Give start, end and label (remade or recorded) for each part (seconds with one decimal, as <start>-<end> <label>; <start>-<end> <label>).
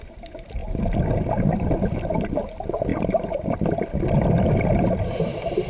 0.0-0.6 remade; 0.6-2.1 recorded; 2.1-5.7 remade